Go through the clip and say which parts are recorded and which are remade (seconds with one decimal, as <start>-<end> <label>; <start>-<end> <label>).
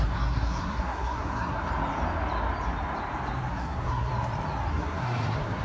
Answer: 0.0-1.7 remade; 1.7-3.5 recorded; 3.5-4.1 remade; 4.1-4.7 recorded; 4.7-5.6 remade